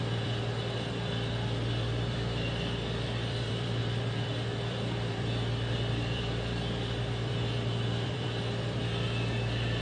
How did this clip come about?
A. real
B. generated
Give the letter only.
B